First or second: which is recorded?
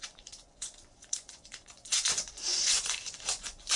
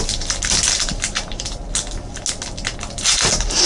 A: second